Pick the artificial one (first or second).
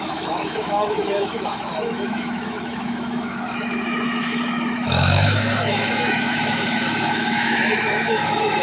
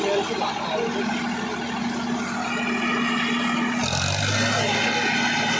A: first